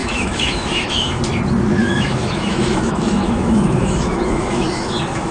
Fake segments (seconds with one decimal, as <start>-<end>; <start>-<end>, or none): 0.0-1.2; 1.8-5.3